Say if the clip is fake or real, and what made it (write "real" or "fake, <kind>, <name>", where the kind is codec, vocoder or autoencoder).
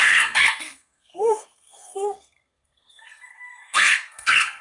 fake, codec, SNAC